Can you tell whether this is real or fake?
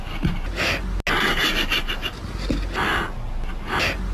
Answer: real